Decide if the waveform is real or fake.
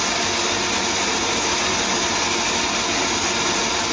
real